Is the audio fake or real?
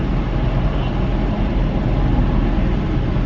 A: real